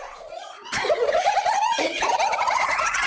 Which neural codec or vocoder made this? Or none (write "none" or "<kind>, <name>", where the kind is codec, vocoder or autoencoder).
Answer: vocoder, Vocos